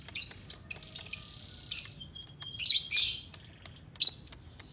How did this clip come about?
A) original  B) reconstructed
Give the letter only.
A